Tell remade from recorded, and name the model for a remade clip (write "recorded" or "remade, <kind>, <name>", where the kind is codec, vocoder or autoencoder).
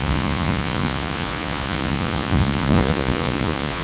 remade, vocoder, Vocos